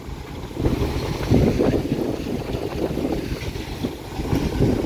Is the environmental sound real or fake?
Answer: real